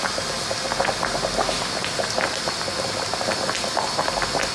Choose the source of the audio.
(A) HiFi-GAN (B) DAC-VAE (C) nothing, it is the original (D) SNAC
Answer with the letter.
C